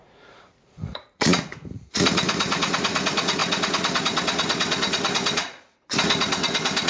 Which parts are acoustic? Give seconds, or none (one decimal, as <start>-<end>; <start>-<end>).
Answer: none